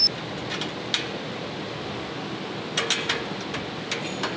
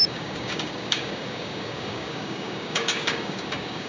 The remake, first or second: second